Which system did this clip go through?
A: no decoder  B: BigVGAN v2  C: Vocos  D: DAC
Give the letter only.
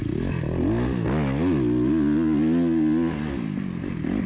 A